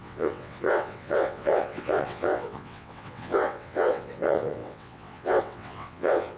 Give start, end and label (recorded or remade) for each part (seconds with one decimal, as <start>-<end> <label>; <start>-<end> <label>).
0.0-6.4 remade